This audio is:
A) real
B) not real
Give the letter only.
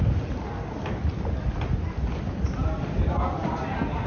A